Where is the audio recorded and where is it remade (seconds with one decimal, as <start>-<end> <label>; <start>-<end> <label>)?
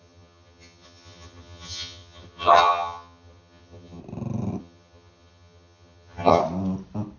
0.0-4.0 remade; 4.0-4.6 recorded; 4.6-6.4 remade; 6.4-7.2 recorded